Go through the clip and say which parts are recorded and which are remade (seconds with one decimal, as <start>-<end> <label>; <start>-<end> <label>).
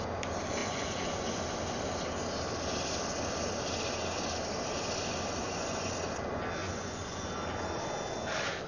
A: 0.0-0.6 recorded; 0.6-1.4 remade; 1.4-5.4 recorded; 5.4-5.9 remade; 5.9-6.6 recorded; 6.6-7.3 remade; 7.3-8.7 recorded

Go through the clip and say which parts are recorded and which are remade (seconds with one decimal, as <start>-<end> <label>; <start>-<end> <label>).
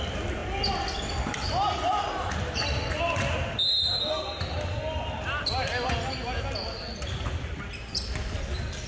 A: 0.0-8.9 recorded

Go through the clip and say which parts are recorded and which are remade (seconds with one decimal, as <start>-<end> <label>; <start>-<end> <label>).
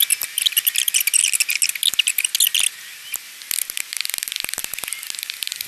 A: 0.0-5.7 recorded